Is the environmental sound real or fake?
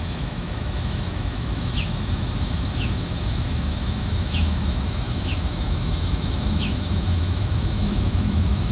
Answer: fake